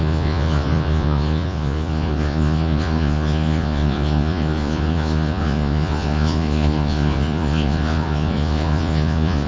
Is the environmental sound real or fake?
fake